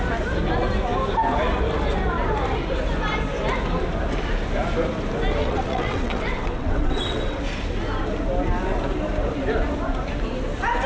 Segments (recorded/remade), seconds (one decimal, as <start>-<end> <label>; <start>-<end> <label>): 0.0-5.4 recorded; 5.4-7.4 remade; 7.4-10.9 recorded